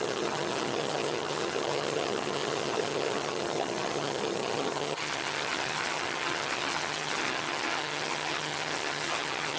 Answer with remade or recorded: remade